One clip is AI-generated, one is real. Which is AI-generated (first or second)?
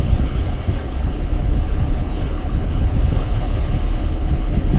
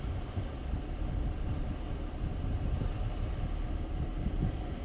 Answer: first